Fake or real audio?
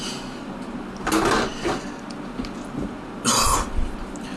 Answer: real